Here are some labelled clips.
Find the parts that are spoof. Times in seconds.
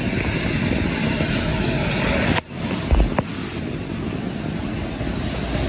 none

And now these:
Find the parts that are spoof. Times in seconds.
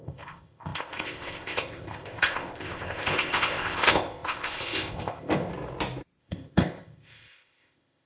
0.0-5.5 (codec, ZipCodec); 6.2-8.1